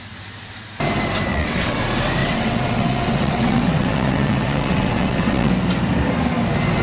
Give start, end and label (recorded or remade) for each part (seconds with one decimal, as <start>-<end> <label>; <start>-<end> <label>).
0.0-1.3 recorded; 1.3-1.8 remade; 1.8-2.2 recorded; 2.2-5.5 remade; 5.5-6.8 recorded

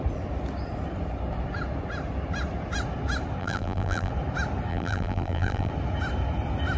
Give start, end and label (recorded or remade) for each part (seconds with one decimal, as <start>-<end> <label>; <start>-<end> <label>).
0.0-3.4 recorded; 3.4-4.1 remade; 4.1-4.7 recorded; 4.7-5.7 remade; 5.7-6.8 recorded

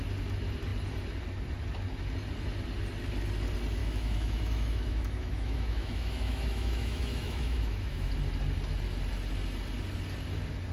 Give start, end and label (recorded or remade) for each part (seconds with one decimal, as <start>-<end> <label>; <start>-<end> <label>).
0.0-3.8 recorded; 3.8-8.1 remade; 8.1-10.7 recorded

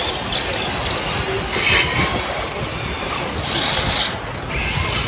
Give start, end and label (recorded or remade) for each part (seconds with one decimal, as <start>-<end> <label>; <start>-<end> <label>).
0.0-2.1 recorded; 2.1-3.8 remade; 3.8-5.1 recorded

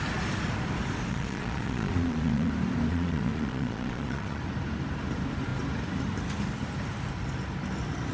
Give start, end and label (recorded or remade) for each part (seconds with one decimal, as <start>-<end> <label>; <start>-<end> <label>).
0.0-1.1 recorded; 1.1-2.5 remade; 2.5-2.9 recorded; 2.9-4.4 remade; 4.4-8.1 recorded

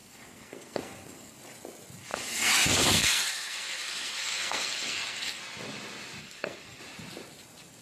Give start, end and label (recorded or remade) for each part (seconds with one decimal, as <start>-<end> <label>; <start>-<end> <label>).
0.0-1.4 remade; 1.4-2.1 recorded; 2.1-5.4 remade; 5.4-6.2 recorded; 6.2-6.8 remade; 6.8-7.8 recorded

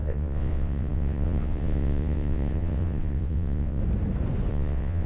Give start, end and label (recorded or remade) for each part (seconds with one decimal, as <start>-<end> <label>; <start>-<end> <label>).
0.0-3.8 remade; 3.8-4.5 recorded; 4.5-5.1 remade

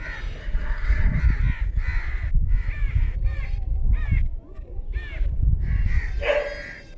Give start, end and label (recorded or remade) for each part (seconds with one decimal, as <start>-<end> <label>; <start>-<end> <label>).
0.0-0.4 recorded; 0.4-1.2 remade; 1.2-7.0 recorded